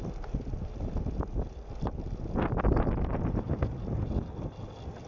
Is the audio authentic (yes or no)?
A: yes